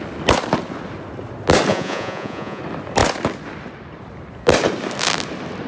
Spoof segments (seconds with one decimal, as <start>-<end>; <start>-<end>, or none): 1.7-2.6